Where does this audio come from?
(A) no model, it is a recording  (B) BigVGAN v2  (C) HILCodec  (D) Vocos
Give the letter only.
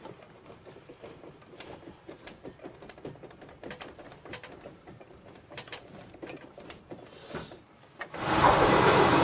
B